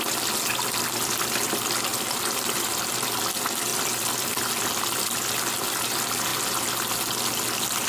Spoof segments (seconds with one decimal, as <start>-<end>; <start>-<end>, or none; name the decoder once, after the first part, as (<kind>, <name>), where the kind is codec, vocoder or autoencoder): 1.9-3.3 (vocoder, BigVGAN v2); 3.7-4.5